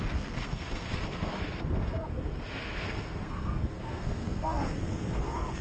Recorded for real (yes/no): no